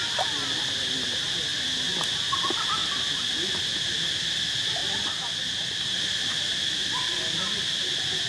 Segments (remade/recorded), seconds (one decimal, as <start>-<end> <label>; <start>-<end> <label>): 0.0-8.3 recorded